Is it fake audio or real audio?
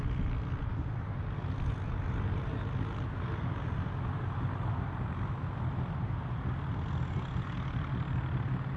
real